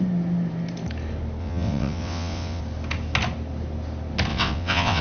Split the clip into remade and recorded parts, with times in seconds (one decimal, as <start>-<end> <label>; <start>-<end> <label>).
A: 0.0-1.4 recorded; 1.4-2.6 remade; 2.6-4.3 recorded; 4.3-5.0 remade